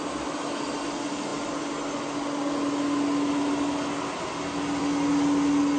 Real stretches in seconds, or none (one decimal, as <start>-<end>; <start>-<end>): 0.0-5.8